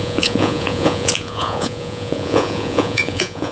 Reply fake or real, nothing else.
fake